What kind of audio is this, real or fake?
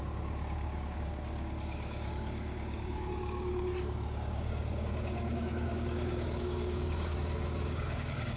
fake